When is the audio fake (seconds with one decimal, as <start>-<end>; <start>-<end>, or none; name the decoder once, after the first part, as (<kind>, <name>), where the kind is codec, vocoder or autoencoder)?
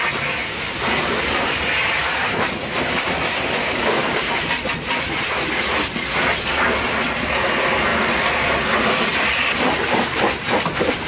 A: 3.6-4.3 (codec, DAC)